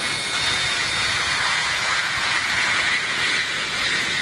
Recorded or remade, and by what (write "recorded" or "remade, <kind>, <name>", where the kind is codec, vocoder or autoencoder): remade, vocoder, Vocos